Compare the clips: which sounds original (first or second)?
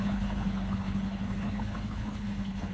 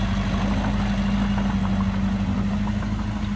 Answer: second